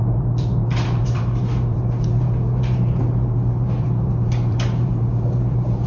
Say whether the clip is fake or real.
fake